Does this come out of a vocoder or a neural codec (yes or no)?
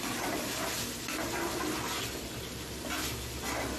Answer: no